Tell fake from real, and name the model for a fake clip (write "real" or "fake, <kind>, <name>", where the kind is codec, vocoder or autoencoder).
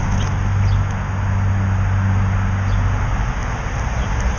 real